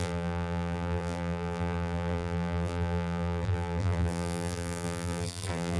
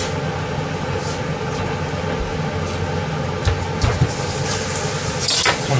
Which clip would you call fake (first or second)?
first